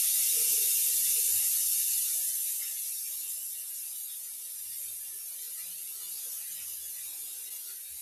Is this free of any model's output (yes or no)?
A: yes